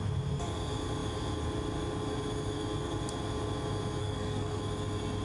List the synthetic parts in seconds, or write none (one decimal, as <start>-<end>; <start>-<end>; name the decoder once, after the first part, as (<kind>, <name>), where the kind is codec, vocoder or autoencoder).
4.0-4.6 (codec, SNAC)